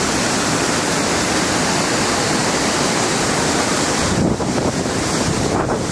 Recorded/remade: remade